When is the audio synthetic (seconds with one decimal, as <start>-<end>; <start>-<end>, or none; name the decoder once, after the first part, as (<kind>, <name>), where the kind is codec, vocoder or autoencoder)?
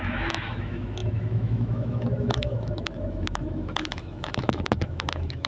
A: 0.0-5.5 (autoencoder, DAC-VAE)